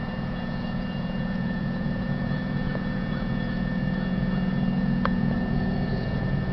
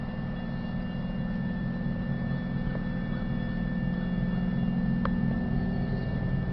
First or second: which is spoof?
first